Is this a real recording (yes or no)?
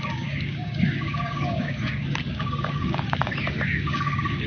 no